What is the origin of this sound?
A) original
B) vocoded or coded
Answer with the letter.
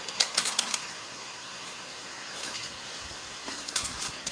B